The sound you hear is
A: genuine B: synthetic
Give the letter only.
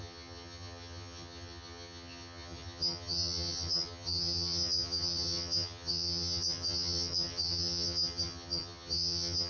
B